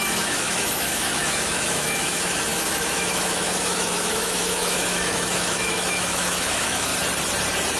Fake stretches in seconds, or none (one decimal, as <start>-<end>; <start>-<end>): 0.0-6.9